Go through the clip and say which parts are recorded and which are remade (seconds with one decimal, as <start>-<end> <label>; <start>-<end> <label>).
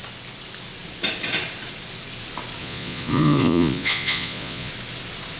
0.0-2.6 recorded; 2.6-4.7 remade; 4.7-5.4 recorded